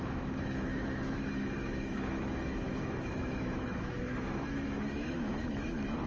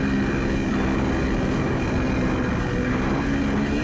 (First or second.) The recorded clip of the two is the second